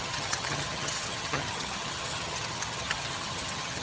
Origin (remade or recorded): remade